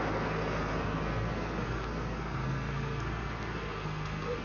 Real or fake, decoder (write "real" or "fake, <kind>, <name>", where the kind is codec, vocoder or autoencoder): fake, codec, SNAC